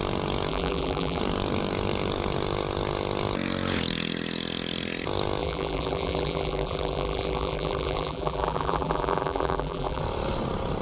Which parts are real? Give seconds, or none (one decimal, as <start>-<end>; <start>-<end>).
0.0-0.5; 1.2-5.4; 10.0-10.8